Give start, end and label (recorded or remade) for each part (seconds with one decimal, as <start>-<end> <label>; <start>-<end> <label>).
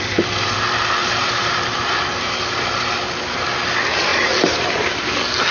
0.0-1.0 recorded; 1.0-1.9 remade; 1.9-4.1 recorded; 4.1-4.7 remade; 4.7-5.5 recorded